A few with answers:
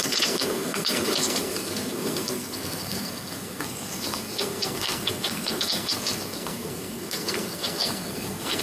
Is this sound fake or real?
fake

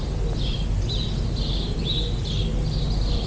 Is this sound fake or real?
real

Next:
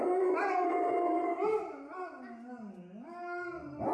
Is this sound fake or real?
real